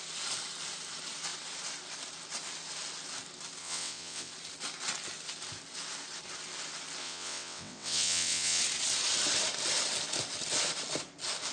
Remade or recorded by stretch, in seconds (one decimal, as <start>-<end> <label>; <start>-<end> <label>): 0.0-3.6 recorded; 3.6-4.3 remade; 4.3-7.0 recorded; 7.0-8.6 remade; 8.6-11.5 recorded